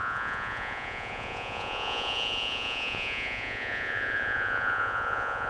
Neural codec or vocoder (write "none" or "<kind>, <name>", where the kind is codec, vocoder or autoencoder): vocoder, Vocos